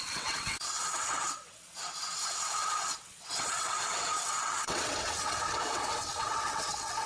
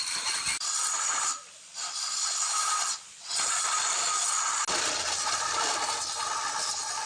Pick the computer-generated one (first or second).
first